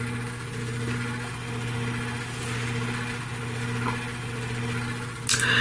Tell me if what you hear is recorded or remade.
recorded